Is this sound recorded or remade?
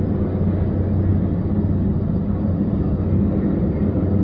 recorded